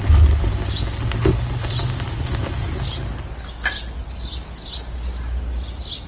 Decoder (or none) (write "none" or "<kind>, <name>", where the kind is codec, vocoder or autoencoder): none